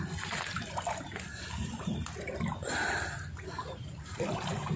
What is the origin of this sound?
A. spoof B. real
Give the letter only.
A